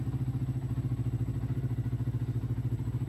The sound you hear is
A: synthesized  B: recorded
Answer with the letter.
B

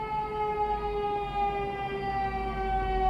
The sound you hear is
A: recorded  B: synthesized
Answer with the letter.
A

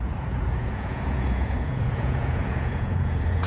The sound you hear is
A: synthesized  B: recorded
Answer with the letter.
A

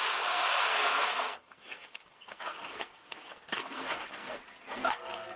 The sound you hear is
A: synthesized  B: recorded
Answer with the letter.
A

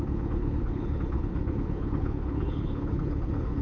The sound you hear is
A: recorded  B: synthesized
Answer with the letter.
B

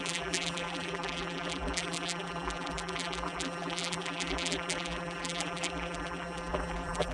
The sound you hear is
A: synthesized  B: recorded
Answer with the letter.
A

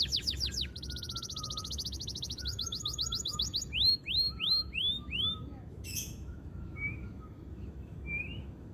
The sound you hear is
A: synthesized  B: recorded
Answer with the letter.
A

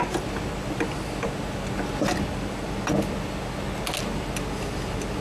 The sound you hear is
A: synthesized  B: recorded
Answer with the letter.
B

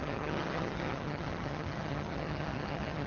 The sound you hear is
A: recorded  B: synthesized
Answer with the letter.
B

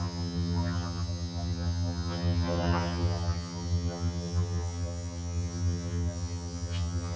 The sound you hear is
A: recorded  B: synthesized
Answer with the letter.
B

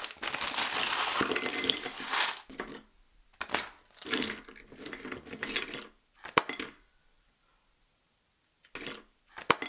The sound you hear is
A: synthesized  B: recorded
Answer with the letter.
B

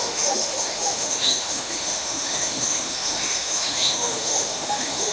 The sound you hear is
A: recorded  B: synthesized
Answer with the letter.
B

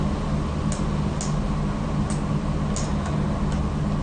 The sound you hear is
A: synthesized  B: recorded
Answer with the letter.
B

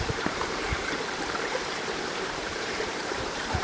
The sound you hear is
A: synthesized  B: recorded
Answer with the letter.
A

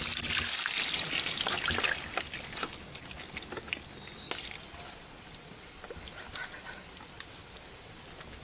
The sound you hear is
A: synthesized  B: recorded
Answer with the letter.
B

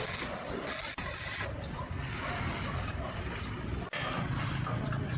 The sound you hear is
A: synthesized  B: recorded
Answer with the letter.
B